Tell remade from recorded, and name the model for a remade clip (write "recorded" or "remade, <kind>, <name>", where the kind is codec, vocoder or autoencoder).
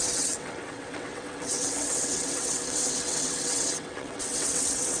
remade, vocoder, WaveNeXt